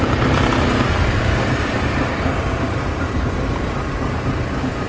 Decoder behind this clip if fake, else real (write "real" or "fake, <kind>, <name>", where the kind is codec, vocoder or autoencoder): fake, vocoder, BigVGAN v2